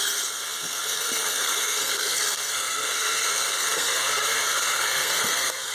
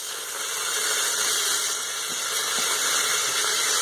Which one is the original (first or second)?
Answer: second